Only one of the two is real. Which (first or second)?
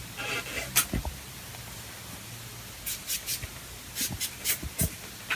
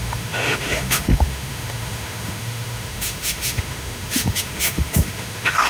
first